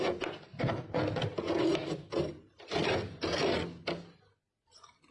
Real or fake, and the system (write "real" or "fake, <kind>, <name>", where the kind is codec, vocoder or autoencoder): real